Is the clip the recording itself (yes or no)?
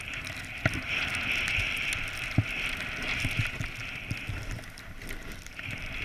yes